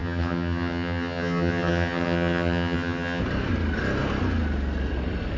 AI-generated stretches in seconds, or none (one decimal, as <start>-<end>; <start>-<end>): 0.0-3.2